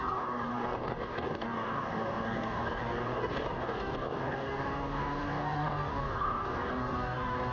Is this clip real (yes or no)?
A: no